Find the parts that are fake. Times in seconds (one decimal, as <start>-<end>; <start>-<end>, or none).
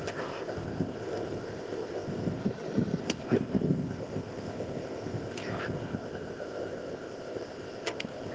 0.0-2.4; 3.0-8.3